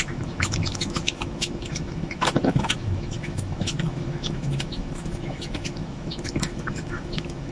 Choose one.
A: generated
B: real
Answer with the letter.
A